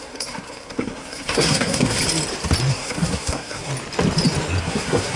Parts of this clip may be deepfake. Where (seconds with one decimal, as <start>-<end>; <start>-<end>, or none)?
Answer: 0.0-2.0; 2.7-3.7; 4.6-5.2